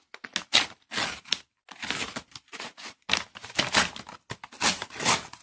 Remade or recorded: recorded